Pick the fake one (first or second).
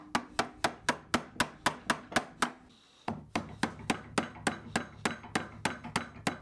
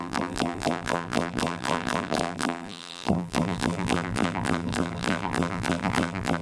second